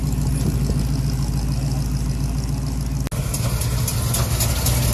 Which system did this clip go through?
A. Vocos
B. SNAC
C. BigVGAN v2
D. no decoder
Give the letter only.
D